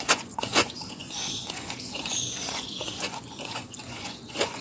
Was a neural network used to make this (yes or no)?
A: yes